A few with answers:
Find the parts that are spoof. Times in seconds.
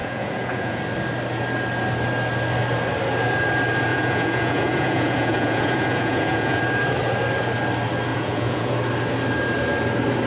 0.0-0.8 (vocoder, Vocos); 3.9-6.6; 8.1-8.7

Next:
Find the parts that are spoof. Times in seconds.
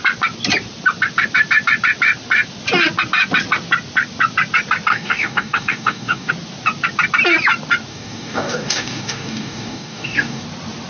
4.9-6.3 (codec, DAC); 7.9-10.4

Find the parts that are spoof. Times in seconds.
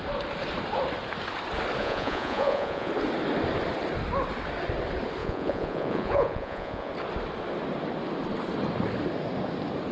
1.8-2.9 (vocoder, Vocos); 5.2-6.9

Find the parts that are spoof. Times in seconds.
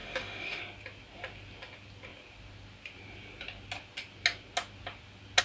0.0-0.6 (autoencoder, DAC-VAE)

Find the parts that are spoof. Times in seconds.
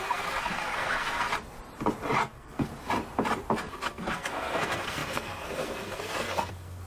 0.0-1.3 (codec, SNAC); 2.2-2.7; 3.6-6.9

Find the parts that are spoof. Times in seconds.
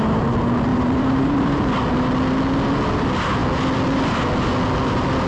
0.7-1.6 (vocoder, BigVGAN v2)